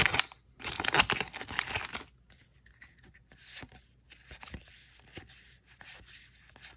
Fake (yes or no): no